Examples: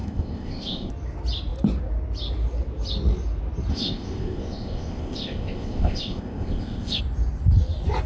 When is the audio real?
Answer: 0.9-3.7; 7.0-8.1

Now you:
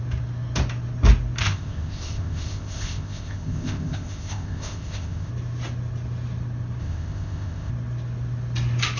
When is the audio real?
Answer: 0.0-1.4; 5.3-6.8; 7.7-9.0